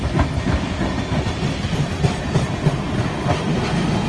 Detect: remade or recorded recorded